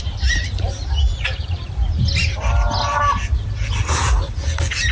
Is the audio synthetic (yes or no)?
no